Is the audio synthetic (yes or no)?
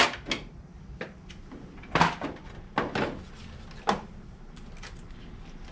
no